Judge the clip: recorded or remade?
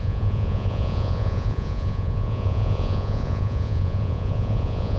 remade